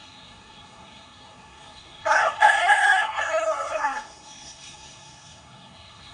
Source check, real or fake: fake